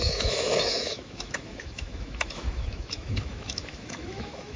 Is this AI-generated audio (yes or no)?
yes